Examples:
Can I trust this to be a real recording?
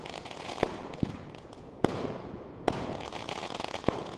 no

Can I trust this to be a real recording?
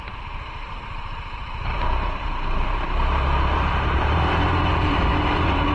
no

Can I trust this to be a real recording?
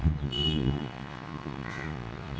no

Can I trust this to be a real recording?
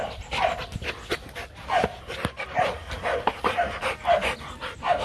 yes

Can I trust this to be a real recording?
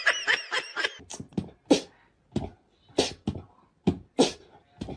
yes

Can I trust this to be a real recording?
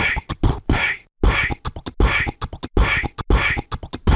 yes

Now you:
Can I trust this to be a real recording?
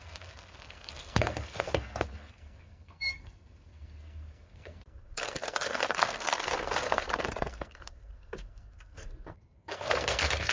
no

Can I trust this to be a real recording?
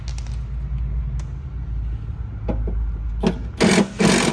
yes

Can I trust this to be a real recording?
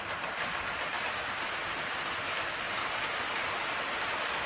yes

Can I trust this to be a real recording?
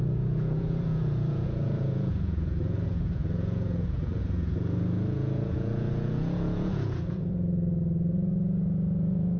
no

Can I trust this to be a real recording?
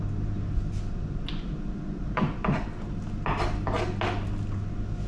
yes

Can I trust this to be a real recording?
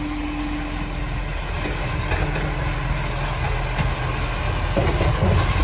yes